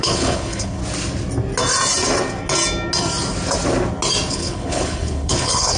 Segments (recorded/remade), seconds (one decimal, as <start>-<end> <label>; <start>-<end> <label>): 0.0-0.8 remade; 0.8-4.3 recorded; 4.3-5.8 remade